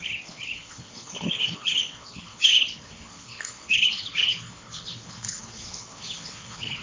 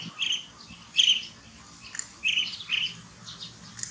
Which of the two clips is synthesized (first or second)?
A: first